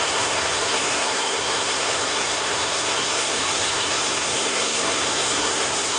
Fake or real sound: fake